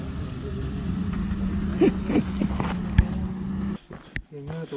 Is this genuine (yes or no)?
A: yes